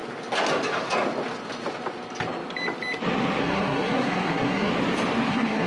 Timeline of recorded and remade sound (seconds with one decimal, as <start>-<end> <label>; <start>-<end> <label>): 0.0-3.4 recorded; 3.4-4.7 remade; 4.7-5.3 recorded; 5.3-5.7 remade